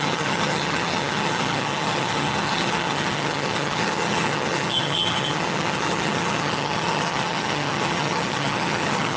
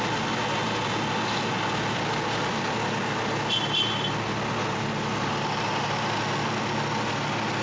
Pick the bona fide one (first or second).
second